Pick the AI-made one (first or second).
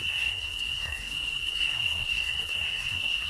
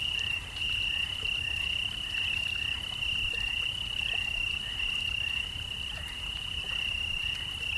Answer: first